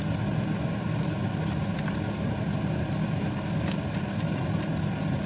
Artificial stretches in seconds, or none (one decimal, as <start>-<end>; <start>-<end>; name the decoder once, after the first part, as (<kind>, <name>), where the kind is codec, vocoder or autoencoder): none